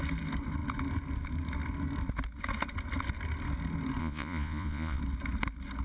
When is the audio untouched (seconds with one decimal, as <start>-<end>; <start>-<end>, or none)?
0.0-4.0; 5.0-5.8